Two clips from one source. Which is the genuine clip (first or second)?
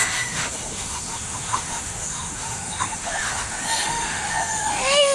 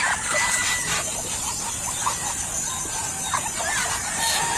second